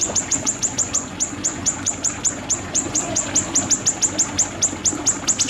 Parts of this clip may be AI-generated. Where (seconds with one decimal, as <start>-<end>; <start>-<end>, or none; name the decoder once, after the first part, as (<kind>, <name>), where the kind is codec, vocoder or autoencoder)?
0.0-3.3 (vocoder, Vocos)